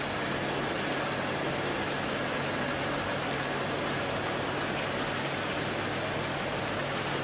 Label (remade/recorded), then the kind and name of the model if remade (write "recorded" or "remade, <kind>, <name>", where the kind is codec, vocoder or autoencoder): recorded